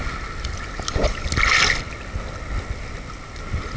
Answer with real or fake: real